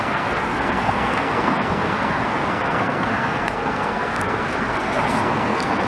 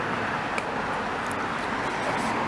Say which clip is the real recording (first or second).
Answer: second